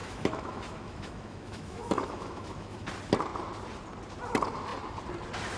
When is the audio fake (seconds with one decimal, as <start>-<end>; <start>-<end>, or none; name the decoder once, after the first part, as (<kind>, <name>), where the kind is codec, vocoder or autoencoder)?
0.0-2.9 (autoencoder, DAC-VAE)

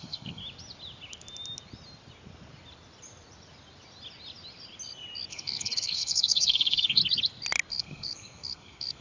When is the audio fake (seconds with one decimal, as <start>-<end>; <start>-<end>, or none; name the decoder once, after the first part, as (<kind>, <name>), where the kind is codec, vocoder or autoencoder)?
0.0-0.4 (codec, SNAC); 5.3-7.0; 7.7-9.0

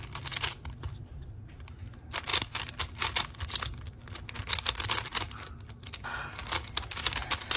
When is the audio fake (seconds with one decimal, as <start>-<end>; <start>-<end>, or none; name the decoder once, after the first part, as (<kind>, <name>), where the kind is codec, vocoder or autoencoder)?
none

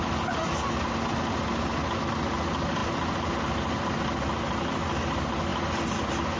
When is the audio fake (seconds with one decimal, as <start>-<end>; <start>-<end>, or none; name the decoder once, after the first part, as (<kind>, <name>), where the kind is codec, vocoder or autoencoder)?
none

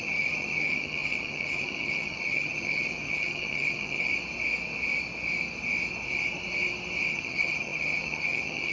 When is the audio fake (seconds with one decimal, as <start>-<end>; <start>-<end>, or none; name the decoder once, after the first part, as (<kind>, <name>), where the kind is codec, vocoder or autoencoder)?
0.0-4.1 (vocoder, HiFi-GAN); 7.1-8.7

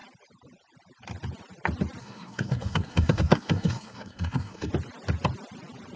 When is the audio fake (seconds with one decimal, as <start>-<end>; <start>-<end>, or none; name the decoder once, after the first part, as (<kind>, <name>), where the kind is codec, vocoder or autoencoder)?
2.0-4.7 (codec, SNAC)

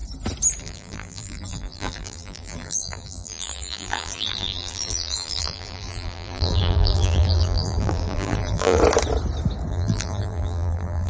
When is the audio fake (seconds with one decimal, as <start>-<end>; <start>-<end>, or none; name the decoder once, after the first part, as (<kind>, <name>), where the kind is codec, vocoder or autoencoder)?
0.6-8.8 (vocoder, BigVGAN v2); 9.7-11.1

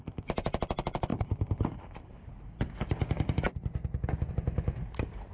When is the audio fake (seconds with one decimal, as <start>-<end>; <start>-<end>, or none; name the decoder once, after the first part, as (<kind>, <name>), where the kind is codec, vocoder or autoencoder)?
none